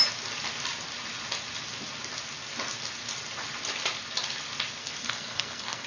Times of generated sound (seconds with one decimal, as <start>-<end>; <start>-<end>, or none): 4.8-5.9